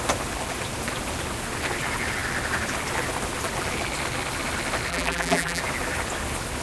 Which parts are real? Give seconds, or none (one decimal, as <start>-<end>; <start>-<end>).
0.0-4.9; 5.6-6.6